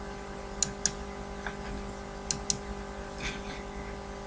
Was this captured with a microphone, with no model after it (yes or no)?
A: yes